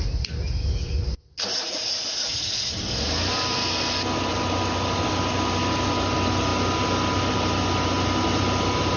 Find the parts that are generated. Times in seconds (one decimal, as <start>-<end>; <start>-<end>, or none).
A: none